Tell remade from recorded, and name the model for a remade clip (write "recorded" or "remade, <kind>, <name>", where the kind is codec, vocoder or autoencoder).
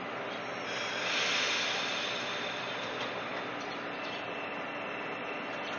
recorded